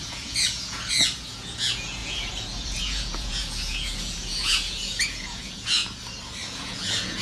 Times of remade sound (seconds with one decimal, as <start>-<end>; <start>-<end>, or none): 0.0-5.8; 6.5-7.2